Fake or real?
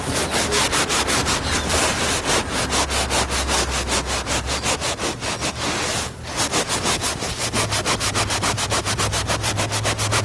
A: real